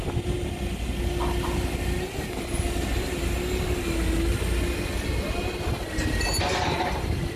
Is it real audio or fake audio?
real